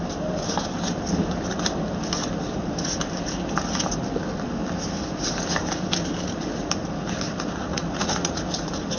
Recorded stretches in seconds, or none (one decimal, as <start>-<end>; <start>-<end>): 0.0-7.7; 8.4-9.0